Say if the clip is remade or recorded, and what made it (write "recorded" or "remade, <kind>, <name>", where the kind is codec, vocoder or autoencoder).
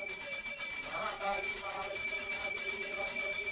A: remade, vocoder, Vocos